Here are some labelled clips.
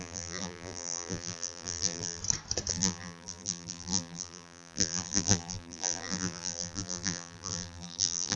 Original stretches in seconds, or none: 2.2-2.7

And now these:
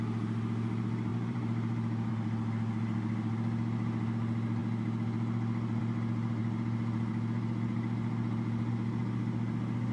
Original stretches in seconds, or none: 0.0-1.1; 2.1-9.9

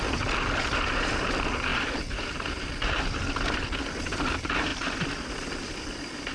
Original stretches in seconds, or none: 0.0-1.7; 3.2-4.7; 5.3-6.3

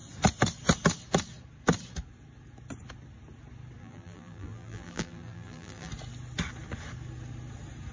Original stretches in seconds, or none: 0.0-3.8; 5.9-7.9